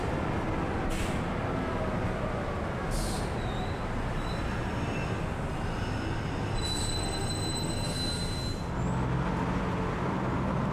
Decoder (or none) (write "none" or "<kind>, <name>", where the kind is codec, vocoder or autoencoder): none